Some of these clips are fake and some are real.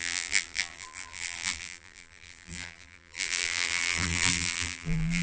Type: fake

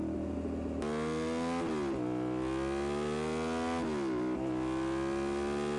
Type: real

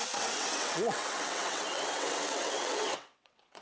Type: fake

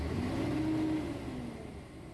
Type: real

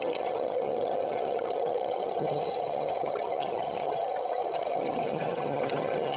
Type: fake